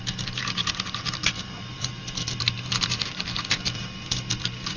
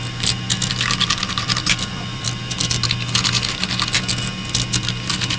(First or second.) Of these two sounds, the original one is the second